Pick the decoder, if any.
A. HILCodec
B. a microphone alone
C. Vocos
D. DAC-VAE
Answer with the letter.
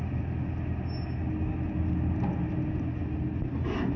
B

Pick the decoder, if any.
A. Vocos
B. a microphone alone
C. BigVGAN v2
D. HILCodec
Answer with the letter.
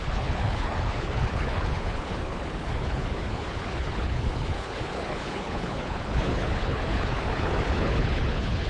D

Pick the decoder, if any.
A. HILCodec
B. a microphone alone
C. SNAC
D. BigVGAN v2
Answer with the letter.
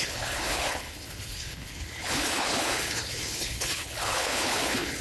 A